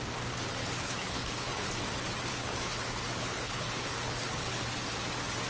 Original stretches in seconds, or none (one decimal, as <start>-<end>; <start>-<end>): 0.0-0.6; 1.7-2.3; 4.6-5.5

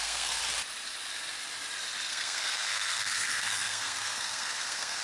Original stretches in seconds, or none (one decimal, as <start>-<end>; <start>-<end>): 0.4-2.1

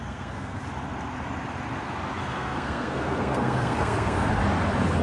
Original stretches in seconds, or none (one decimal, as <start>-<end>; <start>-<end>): 0.6-2.2; 4.3-5.0

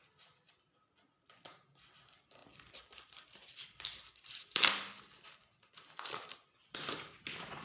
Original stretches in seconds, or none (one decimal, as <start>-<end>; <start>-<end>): 0.0-2.4; 4.3-7.6

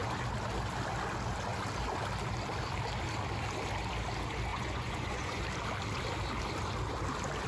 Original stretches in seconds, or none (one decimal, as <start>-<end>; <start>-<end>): 0.0-4.5; 5.4-7.5

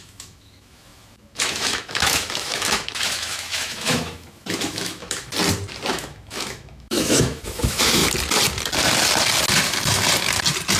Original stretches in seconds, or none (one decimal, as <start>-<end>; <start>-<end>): 5.3-5.9; 8.0-10.8

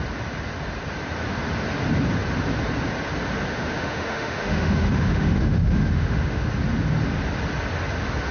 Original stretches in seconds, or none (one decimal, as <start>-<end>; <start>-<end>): 0.0-3.5; 6.4-8.3

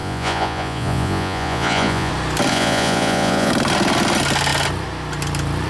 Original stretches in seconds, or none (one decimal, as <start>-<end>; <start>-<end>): 2.1-2.5; 3.5-5.7